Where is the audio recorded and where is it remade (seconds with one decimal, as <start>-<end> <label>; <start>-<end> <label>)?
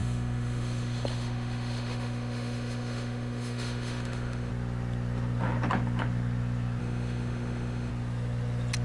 0.0-4.5 remade; 4.5-6.8 recorded; 6.8-7.9 remade; 7.9-8.8 recorded